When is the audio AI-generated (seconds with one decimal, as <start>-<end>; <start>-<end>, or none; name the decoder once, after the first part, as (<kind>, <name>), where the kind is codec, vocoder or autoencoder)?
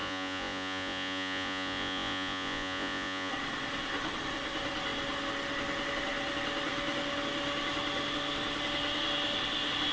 0.0-3.3 (vocoder, Vocos)